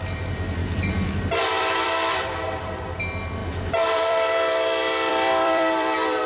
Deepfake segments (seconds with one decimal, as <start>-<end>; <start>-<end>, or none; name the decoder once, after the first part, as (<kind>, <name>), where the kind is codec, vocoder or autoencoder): 0.6-3.0 (vocoder, BigVGAN v2); 3.4-6.3